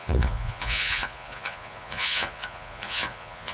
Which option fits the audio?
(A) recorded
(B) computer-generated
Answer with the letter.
B